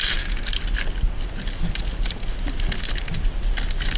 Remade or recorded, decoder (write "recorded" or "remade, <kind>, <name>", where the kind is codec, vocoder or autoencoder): recorded